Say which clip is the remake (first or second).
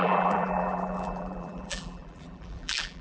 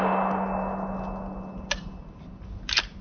first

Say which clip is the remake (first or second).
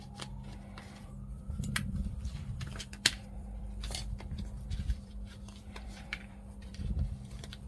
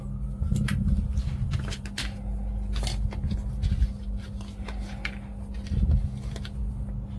first